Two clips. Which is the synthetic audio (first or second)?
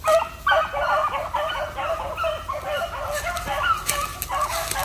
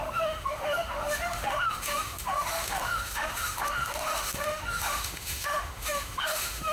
second